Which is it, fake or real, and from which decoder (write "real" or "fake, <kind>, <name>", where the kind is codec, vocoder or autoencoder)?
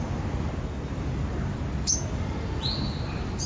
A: real